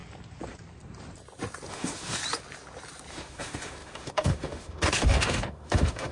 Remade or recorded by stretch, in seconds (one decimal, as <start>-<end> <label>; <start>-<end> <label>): 0.0-1.7 recorded; 1.7-2.2 remade; 2.2-3.1 recorded; 3.1-6.1 remade